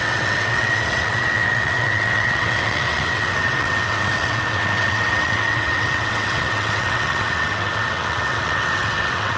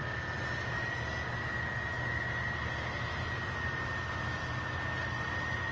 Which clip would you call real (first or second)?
second